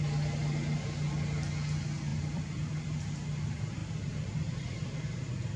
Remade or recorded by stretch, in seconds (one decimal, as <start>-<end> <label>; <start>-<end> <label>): 0.0-2.1 recorded; 2.1-3.1 remade; 3.1-3.8 recorded; 3.8-5.6 remade